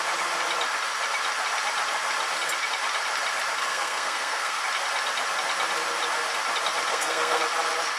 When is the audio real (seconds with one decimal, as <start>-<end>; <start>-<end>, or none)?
0.0-3.6; 4.6-6.9; 7.4-8.0